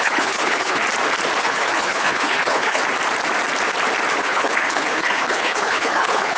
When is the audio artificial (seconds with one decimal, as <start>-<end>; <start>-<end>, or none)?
0.0-0.8; 1.4-2.8; 4.2-6.4